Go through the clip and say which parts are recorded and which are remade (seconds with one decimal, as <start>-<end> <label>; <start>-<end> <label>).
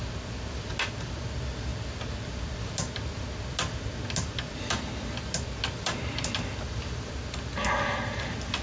0.0-8.6 recorded